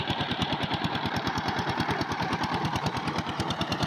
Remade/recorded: remade